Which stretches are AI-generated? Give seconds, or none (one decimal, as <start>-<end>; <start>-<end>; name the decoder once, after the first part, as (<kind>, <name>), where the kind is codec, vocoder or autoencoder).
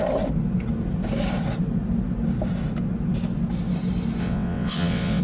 4.2-5.2 (vocoder, WaveNeXt)